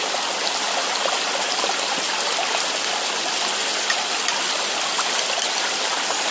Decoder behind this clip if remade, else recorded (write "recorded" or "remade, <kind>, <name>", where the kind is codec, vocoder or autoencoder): recorded